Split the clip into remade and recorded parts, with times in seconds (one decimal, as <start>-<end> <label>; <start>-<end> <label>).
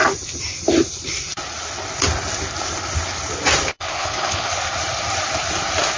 0.0-3.7 recorded; 3.7-4.5 remade; 4.5-6.0 recorded